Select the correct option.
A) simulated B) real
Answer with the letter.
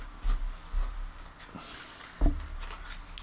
B